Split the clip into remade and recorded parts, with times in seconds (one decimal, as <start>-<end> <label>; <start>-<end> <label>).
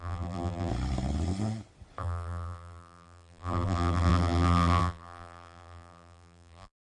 0.0-0.7 remade; 0.7-2.0 recorded; 2.0-6.9 remade